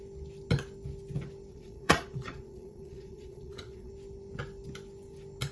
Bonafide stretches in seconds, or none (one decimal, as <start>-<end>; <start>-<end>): 0.0-1.5; 3.9-5.5